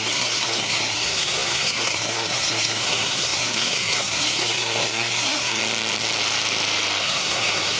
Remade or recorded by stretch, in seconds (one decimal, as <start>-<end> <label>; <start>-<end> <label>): 0.0-5.6 remade; 5.6-7.0 recorded; 7.0-7.8 remade